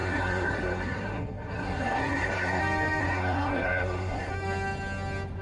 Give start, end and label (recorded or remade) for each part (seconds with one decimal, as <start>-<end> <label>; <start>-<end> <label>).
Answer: 0.0-2.6 remade; 2.6-3.0 recorded; 3.0-4.3 remade; 4.3-5.4 recorded